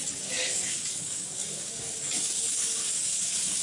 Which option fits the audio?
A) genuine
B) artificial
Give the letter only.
B